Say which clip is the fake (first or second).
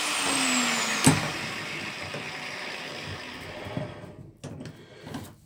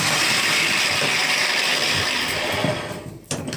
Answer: second